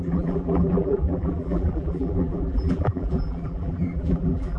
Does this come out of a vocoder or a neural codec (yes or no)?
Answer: yes